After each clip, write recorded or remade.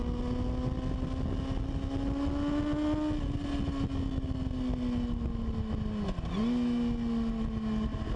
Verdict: recorded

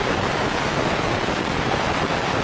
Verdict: recorded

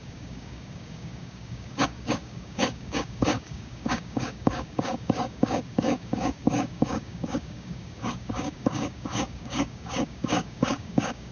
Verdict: remade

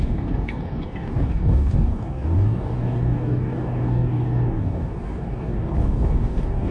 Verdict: remade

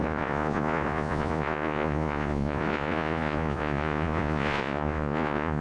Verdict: remade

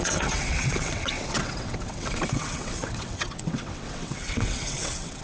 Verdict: remade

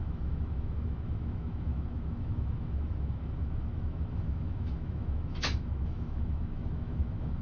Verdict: remade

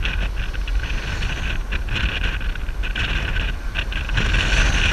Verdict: recorded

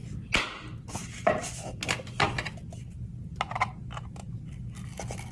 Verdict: recorded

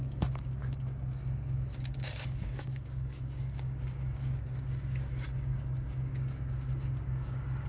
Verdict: remade